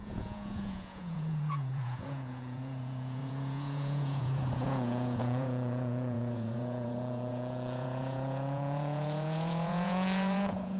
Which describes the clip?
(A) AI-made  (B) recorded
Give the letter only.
A